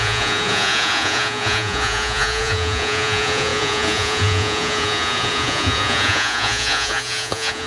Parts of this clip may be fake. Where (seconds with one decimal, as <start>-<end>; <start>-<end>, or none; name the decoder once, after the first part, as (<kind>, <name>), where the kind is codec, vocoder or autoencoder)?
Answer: 0.0-7.7 (vocoder, Vocos)